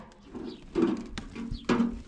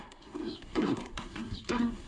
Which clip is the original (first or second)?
first